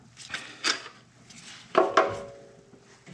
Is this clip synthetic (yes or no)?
no